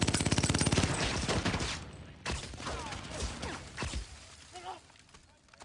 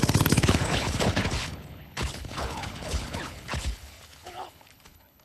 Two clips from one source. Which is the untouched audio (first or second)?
first